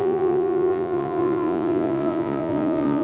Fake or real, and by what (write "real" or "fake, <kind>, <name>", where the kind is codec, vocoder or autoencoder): fake, vocoder, Vocos